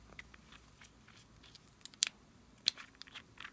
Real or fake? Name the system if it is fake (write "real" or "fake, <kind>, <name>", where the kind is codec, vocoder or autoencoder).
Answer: real